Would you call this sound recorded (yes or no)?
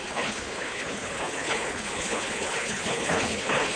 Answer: no